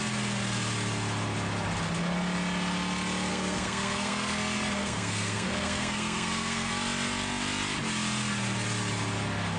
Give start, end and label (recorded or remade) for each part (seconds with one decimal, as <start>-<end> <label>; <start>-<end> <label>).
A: 0.0-3.3 recorded; 3.3-6.7 remade; 6.7-9.6 recorded